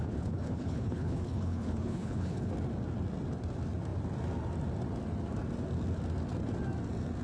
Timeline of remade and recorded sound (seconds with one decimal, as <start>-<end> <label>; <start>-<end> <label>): 0.0-2.5 remade; 2.5-7.2 recorded